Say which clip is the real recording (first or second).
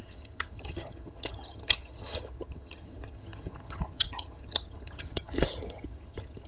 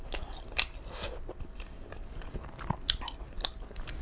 second